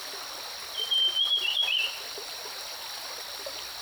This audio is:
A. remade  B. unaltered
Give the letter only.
B